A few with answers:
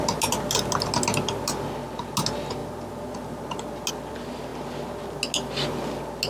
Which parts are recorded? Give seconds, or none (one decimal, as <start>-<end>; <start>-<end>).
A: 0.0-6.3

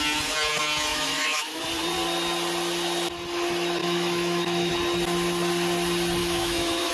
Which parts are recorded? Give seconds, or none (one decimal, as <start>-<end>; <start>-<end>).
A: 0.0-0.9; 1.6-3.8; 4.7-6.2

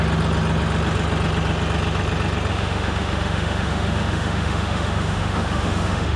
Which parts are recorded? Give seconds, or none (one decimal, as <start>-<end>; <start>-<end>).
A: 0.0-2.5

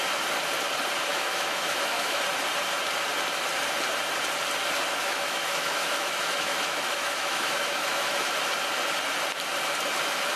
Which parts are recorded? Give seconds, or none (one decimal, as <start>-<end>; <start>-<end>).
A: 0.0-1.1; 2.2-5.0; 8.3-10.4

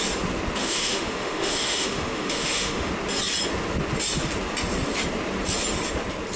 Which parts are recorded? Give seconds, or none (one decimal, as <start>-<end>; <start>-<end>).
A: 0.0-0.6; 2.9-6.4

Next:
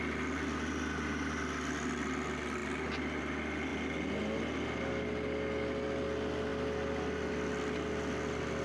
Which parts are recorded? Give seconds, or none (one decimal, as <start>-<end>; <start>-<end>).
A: 0.0-8.6